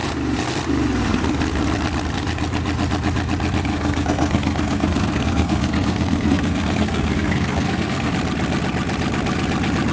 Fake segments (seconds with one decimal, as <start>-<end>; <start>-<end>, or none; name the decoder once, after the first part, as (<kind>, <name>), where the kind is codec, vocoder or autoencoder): 3.7-8.1 (codec, SNAC)